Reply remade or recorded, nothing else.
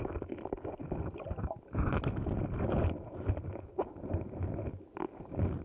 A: recorded